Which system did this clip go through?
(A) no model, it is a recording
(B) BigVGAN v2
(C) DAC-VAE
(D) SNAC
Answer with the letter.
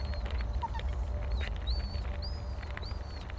A